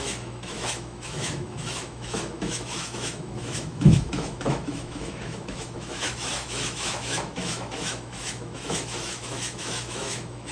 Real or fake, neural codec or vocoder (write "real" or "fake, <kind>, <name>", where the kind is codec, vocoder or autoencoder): fake, autoencoder, DAC-VAE